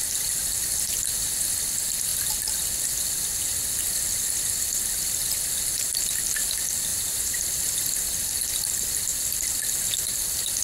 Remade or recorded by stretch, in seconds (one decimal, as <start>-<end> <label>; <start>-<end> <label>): 0.0-6.9 recorded; 6.9-7.6 remade; 7.6-10.6 recorded